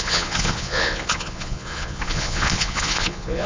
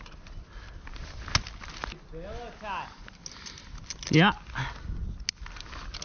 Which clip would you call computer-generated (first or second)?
first